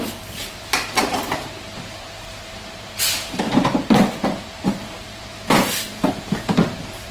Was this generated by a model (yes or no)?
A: yes